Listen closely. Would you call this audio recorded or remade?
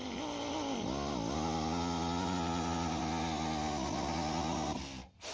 recorded